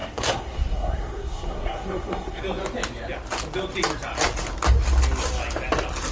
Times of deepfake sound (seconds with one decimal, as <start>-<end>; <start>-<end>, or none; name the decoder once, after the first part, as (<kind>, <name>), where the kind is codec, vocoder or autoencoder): 0.0-2.4 (codec, SNAC)